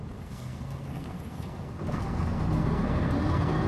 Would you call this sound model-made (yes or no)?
yes